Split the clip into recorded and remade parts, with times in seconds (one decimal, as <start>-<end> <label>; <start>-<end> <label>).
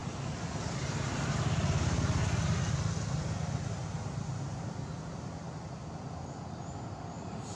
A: 0.0-7.6 recorded